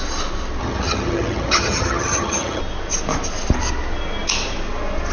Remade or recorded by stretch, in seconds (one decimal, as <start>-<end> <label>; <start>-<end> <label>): 0.0-0.6 recorded; 0.6-2.6 remade; 2.6-5.1 recorded